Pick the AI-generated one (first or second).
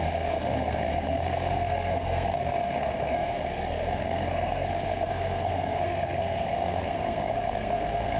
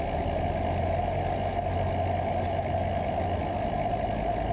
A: first